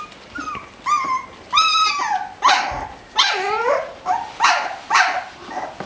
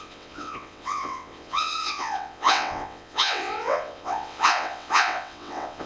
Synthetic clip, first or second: second